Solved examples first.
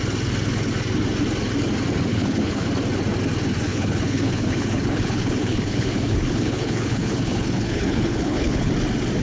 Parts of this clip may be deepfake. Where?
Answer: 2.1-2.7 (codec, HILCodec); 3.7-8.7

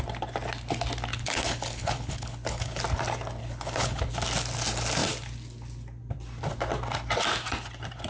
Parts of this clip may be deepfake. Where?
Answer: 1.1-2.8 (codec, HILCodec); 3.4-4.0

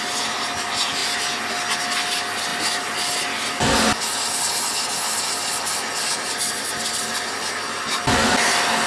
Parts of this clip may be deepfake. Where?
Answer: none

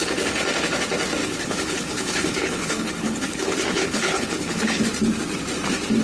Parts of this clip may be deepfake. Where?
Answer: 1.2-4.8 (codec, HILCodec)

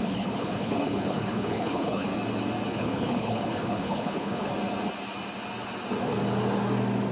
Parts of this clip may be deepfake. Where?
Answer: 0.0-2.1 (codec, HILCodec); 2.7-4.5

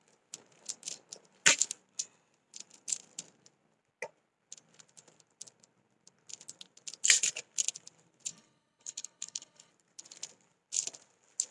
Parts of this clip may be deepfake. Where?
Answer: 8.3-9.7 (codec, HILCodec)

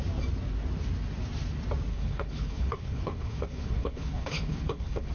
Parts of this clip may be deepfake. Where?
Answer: 1.9-5.1 (codec, HILCodec)